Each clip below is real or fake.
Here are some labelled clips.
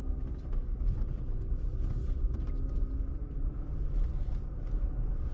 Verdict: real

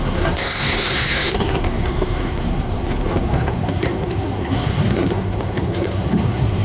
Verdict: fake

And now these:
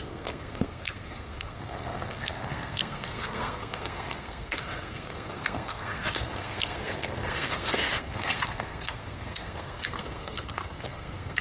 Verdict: fake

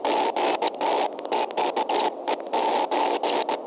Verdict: real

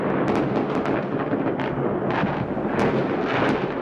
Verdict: real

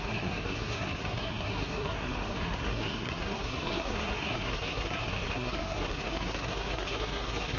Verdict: fake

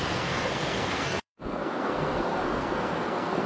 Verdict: fake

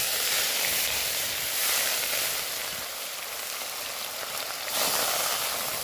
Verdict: real